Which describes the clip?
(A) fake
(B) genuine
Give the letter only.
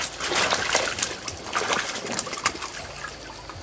B